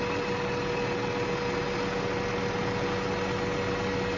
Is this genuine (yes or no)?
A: yes